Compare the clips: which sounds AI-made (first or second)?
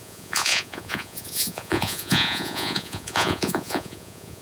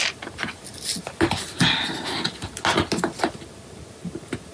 first